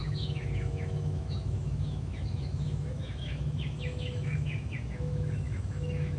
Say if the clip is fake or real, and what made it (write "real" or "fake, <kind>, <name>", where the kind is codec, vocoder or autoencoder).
fake, autoencoder, DAC-VAE